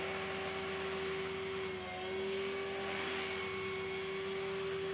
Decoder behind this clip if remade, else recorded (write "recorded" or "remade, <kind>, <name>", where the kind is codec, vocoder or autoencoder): recorded